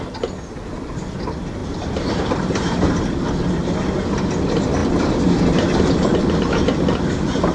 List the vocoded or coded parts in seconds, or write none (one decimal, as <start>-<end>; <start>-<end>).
1.6-3.1